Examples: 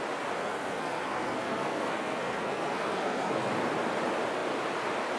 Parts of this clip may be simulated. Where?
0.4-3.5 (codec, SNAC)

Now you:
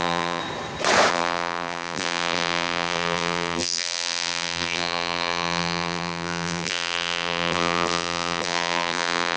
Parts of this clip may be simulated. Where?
0.0-0.4 (vocoder, BigVGAN v2); 1.1-9.4

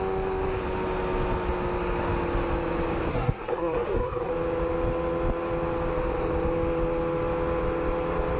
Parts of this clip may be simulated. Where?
3.1-4.3 (codec, SNAC)

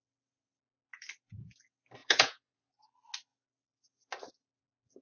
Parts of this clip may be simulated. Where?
2.0-2.7 (vocoder, Vocos)